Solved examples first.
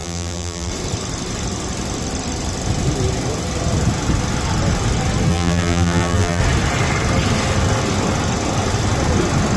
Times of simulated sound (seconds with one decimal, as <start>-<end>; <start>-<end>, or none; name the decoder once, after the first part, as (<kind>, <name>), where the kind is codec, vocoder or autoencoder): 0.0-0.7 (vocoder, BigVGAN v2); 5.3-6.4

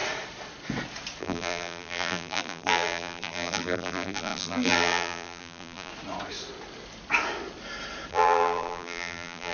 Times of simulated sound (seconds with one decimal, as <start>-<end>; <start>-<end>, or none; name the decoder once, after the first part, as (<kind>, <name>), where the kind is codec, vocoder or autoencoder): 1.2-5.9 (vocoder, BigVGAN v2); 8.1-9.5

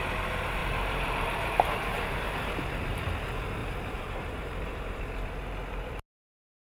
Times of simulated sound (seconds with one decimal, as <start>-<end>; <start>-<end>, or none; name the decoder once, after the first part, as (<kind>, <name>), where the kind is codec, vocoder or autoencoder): 0.6-2.5 (vocoder, BigVGAN v2); 3.6-5.0

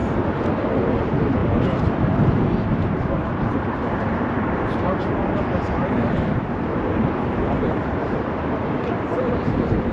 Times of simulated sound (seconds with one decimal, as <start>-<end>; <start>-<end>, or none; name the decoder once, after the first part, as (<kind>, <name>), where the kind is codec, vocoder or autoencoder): 0.8-9.9 (vocoder, BigVGAN v2)